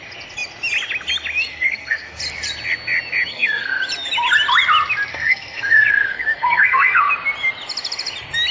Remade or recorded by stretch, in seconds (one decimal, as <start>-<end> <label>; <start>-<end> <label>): 0.0-1.5 recorded; 1.5-2.2 remade; 2.2-3.3 recorded; 3.3-3.8 remade; 3.8-5.1 recorded; 5.1-7.1 remade; 7.1-8.5 recorded